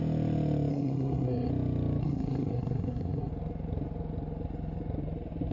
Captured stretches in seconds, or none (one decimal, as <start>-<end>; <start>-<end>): 0.0-0.7; 1.5-2.0; 3.3-5.5